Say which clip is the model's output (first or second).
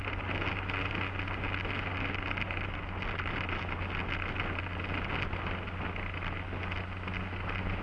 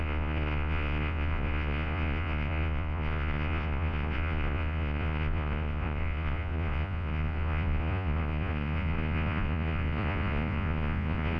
second